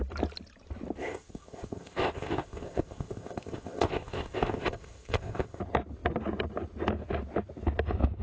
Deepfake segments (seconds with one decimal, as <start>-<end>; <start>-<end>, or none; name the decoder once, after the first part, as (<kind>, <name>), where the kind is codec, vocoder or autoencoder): 1.0-5.6 (codec, ZipCodec)